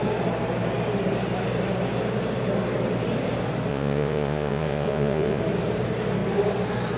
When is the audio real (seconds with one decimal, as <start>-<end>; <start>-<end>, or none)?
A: 0.0-3.7; 5.4-7.0